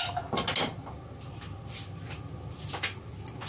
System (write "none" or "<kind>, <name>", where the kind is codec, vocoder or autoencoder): none